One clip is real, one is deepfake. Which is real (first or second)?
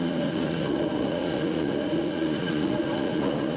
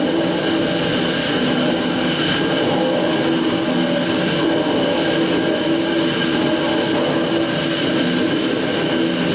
second